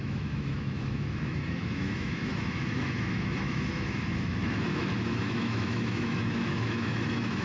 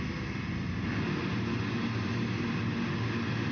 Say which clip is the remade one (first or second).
first